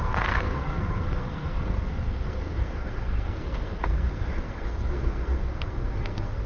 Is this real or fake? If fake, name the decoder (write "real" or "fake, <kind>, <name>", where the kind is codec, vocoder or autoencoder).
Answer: fake, codec, SNAC